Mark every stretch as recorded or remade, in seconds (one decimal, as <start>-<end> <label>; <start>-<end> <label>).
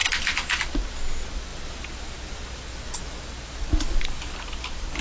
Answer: 0.0-5.0 recorded